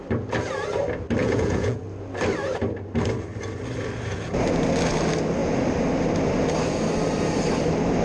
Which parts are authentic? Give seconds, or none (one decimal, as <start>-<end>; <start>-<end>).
0.0-1.2; 1.8-8.0

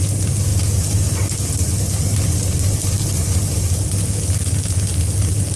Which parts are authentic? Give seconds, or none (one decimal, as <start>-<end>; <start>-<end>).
0.0-5.6

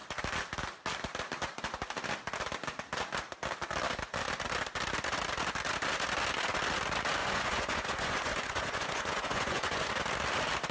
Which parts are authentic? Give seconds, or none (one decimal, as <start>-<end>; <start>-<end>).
0.0-7.2; 9.9-10.7